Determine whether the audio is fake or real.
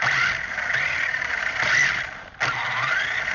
real